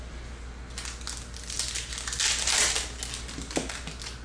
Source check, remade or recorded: recorded